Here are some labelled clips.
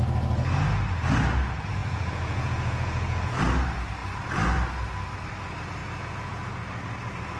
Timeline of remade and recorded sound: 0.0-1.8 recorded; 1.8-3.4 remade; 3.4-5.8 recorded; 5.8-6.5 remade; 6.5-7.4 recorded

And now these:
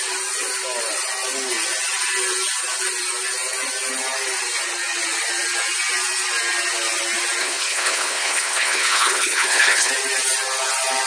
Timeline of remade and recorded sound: 0.0-7.4 recorded; 7.4-9.9 remade; 9.9-11.1 recorded

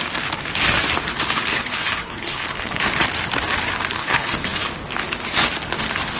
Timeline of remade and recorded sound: 0.0-1.5 recorded; 1.5-2.8 remade; 2.8-4.0 recorded; 4.0-4.7 remade; 4.7-6.2 recorded

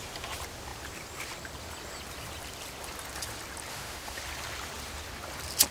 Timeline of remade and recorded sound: 0.0-3.7 recorded; 3.7-4.2 remade; 4.2-5.7 recorded

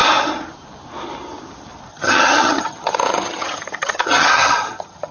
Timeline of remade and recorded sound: 0.0-1.9 recorded; 1.9-5.1 remade

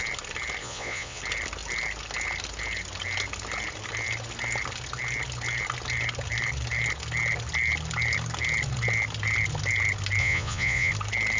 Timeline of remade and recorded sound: 0.0-0.6 recorded; 0.6-1.2 remade; 1.2-10.2 recorded; 10.2-10.9 remade; 10.9-11.4 recorded

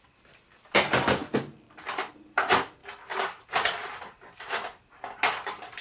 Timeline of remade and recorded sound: 0.0-5.8 recorded

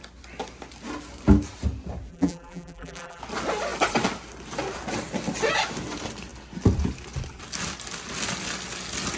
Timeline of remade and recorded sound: 0.0-2.1 recorded; 2.1-3.2 remade; 3.2-9.2 recorded